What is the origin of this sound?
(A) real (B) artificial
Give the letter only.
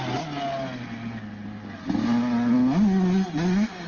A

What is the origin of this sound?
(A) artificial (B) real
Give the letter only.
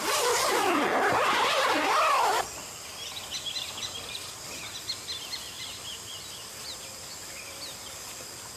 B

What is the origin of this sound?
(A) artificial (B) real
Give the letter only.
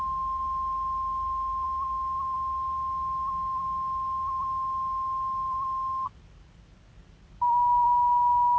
B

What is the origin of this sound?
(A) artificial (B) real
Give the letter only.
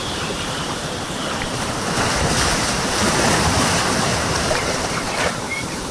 A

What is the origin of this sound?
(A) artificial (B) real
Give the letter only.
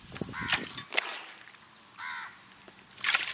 B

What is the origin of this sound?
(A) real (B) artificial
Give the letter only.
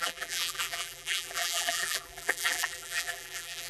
B